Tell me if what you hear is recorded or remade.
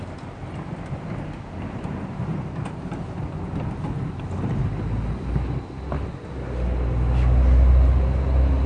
recorded